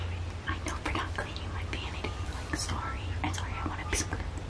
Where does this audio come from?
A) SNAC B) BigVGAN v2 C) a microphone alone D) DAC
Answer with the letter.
C